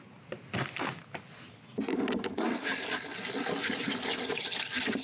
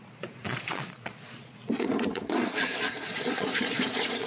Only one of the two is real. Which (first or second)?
first